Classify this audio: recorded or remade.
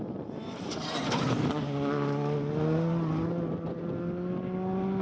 recorded